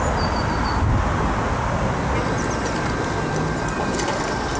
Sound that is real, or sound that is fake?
real